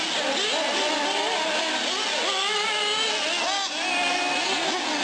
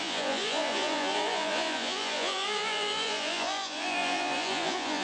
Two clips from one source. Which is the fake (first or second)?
second